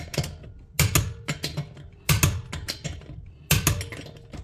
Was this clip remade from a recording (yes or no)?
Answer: no